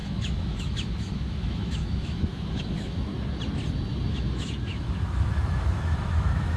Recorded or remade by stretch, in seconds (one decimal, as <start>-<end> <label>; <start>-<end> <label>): 0.0-3.1 remade; 3.1-4.1 recorded; 4.1-6.6 remade